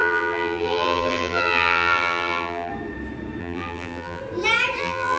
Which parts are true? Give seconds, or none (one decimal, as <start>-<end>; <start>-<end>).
2.7-3.4; 4.2-4.8